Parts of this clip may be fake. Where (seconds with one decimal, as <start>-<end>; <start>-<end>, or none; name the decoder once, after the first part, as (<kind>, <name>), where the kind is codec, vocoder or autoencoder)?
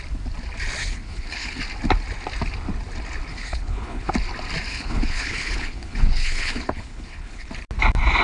0.8-1.6 (codec, HILCodec); 3.3-4.1; 4.7-7.5